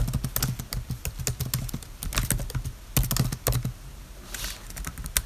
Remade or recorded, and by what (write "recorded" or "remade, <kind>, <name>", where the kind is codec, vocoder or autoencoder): recorded